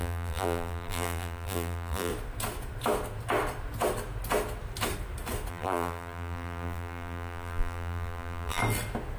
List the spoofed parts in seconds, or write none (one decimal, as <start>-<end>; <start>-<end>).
0.0-2.1; 5.5-8.6